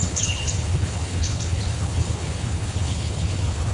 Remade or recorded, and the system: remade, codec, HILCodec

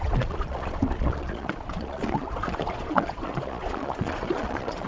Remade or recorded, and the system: remade, vocoder, Vocos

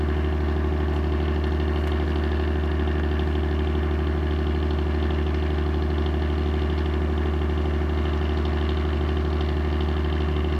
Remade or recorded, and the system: recorded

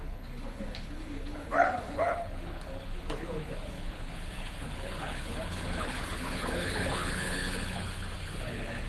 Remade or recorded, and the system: remade, codec, HILCodec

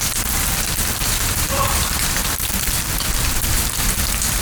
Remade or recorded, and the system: remade, vocoder, BigVGAN v2